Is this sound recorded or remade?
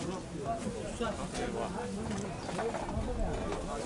recorded